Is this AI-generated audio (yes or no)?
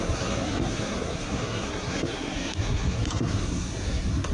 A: yes